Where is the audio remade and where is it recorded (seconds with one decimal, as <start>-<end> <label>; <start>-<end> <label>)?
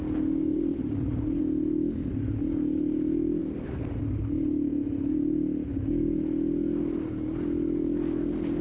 0.0-0.5 recorded; 0.5-1.4 remade; 1.4-3.4 recorded; 3.4-4.0 remade; 4.0-8.6 recorded